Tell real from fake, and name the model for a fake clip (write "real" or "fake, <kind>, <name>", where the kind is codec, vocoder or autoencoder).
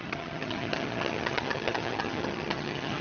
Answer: fake, vocoder, HiFi-GAN